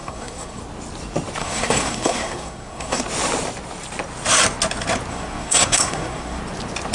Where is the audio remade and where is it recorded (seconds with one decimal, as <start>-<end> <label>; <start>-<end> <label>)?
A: 0.0-0.6 remade; 0.6-1.4 recorded; 1.4-3.0 remade; 3.0-5.1 recorded; 5.1-6.4 remade; 6.4-6.9 recorded